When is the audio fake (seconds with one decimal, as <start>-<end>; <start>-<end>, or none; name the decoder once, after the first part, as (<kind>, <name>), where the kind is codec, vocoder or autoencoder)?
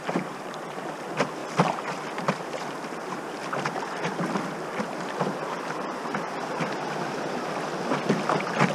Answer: none